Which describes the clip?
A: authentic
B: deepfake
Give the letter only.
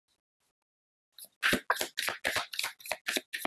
A